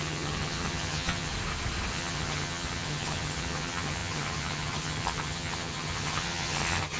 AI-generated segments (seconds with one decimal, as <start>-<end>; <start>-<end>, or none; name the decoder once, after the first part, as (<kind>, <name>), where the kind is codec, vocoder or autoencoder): 0.0-1.3 (vocoder, HiFi-GAN); 1.9-7.0